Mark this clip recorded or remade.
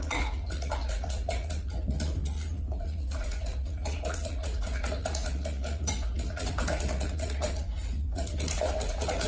remade